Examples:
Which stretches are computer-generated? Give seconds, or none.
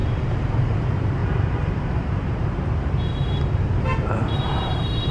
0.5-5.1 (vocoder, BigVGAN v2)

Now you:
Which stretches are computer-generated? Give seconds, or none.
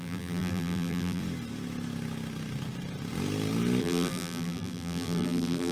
0.0-1.2 (vocoder, BigVGAN v2); 3.8-5.7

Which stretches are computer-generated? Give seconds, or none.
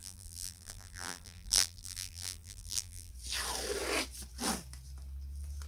0.0-3.1 (vocoder, BigVGAN v2)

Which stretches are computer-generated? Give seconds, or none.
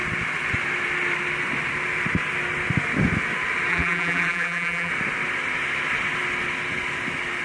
3.7-4.9 (vocoder, BigVGAN v2)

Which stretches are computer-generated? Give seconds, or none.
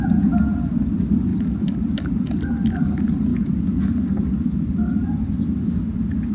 none